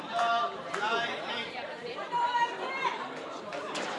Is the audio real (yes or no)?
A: no